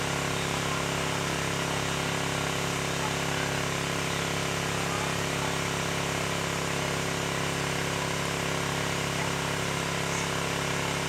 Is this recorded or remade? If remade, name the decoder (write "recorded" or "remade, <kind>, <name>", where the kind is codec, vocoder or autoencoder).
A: recorded